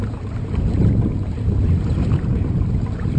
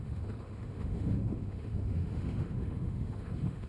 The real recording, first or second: first